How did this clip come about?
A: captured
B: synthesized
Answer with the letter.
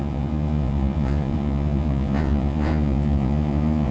B